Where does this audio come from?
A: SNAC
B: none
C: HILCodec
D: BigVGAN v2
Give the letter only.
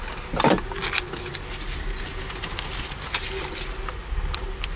B